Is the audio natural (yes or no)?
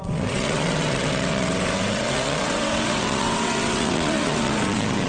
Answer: no